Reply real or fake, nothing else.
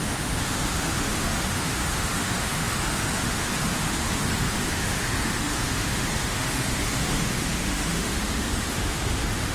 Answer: fake